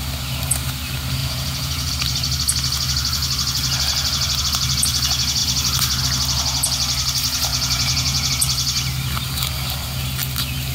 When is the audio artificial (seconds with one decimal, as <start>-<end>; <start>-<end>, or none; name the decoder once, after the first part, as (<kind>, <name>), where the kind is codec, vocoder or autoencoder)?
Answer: 1.2-1.9 (vocoder, Vocos); 7.5-8.3